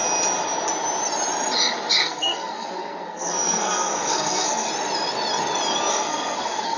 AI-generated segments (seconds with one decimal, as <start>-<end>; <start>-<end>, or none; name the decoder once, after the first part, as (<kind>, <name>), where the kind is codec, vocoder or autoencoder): 2.0-4.7 (codec, SNAC); 5.9-6.8